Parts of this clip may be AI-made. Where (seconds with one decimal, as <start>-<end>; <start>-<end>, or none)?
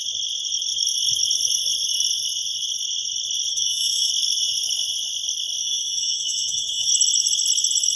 3.5-4.1; 5.6-6.9